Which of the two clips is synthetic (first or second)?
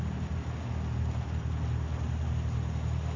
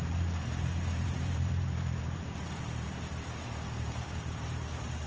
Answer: second